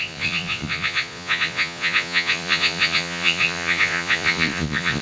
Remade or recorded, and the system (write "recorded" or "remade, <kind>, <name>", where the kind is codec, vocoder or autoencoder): remade, vocoder, Vocos